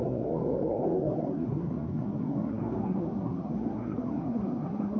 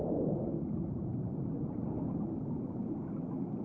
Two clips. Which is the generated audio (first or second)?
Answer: first